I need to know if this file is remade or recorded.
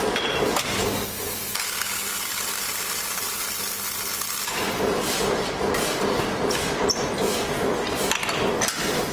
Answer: recorded